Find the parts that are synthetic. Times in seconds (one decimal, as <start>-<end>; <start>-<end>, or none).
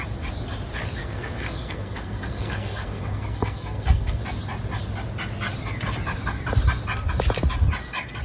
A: 1.0-4.2